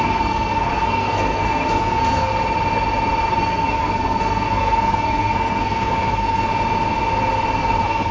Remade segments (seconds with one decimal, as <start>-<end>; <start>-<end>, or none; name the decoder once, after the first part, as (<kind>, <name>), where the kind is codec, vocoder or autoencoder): 0.0-2.3 (codec, SNAC); 3.3-6.5; 7.6-8.1